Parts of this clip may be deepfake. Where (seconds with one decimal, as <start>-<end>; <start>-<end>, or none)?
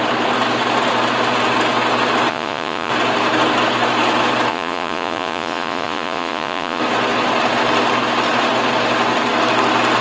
2.3-2.9; 4.5-6.8